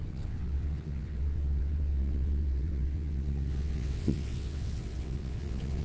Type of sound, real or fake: fake